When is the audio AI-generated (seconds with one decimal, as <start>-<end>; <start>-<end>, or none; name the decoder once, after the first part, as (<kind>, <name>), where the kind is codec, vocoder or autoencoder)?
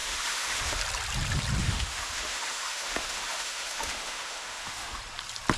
0.0-0.8 (autoencoder, DAC-VAE); 1.6-5.0